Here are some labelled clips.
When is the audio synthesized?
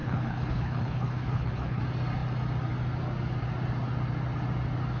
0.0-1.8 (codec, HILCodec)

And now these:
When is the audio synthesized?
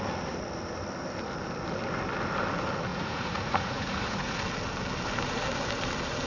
2.9-4.4 (vocoder, Vocos)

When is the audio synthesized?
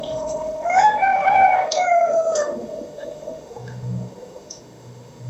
0.0-5.3 (autoencoder, DAC-VAE)